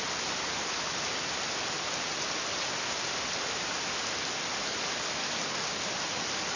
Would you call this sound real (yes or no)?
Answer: yes